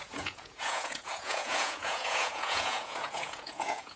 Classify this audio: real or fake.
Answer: fake